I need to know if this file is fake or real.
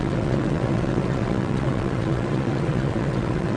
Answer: fake